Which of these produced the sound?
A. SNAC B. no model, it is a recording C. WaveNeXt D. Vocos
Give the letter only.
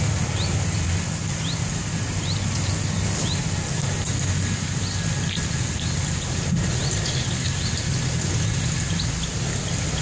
B